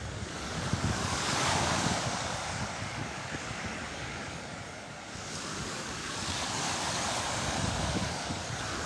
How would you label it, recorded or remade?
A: remade